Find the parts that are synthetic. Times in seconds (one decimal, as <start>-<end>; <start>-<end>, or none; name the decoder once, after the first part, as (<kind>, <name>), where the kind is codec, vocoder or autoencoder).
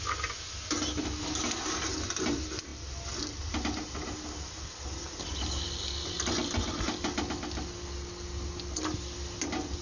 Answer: none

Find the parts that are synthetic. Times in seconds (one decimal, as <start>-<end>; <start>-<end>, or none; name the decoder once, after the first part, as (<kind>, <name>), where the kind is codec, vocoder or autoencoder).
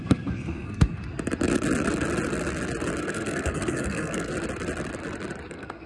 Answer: 0.0-1.0 (codec, SNAC); 3.0-4.3; 5.5-5.9